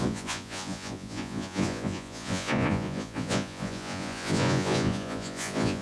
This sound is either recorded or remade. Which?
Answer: remade